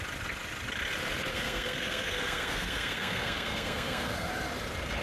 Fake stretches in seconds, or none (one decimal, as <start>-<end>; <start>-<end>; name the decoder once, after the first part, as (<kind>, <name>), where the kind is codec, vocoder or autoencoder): 1.3-4.3 (codec, SNAC)